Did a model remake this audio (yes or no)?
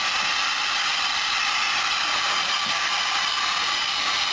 no